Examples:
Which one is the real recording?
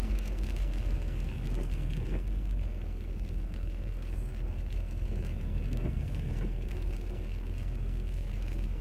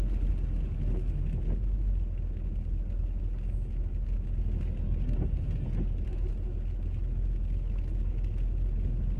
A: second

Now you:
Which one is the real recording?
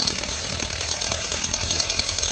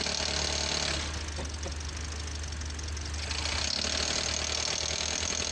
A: second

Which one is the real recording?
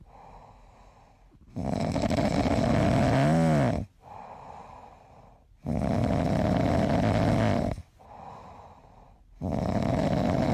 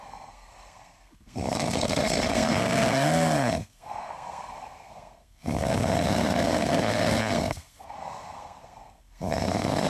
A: first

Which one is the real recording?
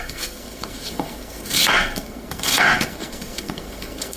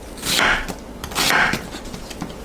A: second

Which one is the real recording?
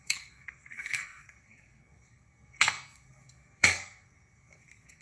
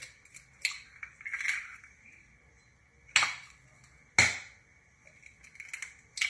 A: second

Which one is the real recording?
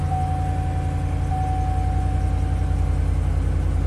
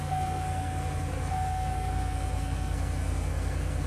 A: first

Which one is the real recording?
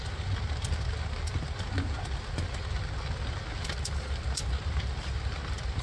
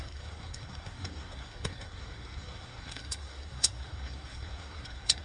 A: first